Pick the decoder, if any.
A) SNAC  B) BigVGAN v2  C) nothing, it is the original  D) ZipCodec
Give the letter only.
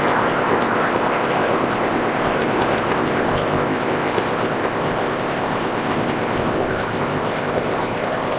D